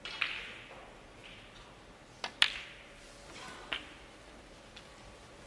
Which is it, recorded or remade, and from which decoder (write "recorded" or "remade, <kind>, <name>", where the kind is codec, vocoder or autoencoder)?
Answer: recorded